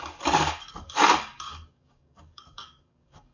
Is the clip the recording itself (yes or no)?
no